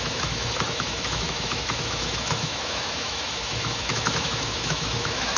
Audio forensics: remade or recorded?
remade